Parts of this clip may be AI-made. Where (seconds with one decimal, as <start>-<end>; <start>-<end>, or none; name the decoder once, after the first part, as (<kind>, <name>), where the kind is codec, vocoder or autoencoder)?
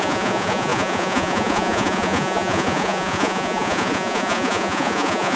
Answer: 0.0-5.4 (vocoder, Vocos)